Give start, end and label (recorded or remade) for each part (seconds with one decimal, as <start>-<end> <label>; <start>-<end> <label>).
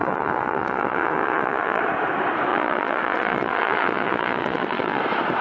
0.0-1.8 remade; 1.8-2.5 recorded; 2.5-5.0 remade; 5.0-5.4 recorded